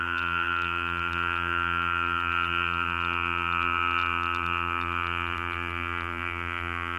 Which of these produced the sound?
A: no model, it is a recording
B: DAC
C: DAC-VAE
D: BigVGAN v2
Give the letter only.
D